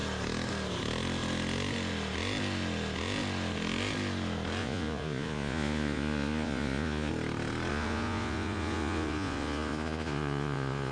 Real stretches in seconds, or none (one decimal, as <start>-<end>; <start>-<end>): 0.0-4.6; 7.1-7.7